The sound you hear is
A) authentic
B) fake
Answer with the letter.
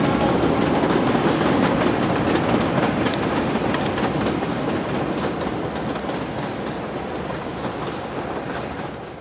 A